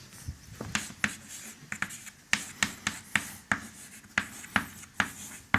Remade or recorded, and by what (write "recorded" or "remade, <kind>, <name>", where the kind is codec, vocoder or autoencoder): recorded